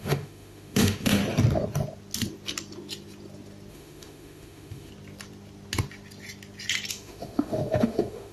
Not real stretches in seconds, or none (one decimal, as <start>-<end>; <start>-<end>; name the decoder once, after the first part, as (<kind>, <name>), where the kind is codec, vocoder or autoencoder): 0.0-1.2 (autoencoder, DAC-VAE); 3.7-4.9; 6.9-8.3